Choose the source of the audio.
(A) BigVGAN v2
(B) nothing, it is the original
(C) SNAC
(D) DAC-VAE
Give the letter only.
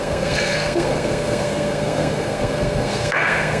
C